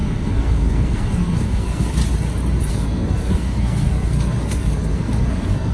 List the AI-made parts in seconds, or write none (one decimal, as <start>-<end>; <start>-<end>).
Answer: 0.0-2.0; 2.7-5.7